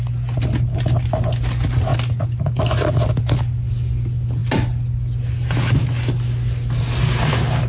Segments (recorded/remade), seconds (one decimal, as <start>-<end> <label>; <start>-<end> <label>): 0.0-7.7 recorded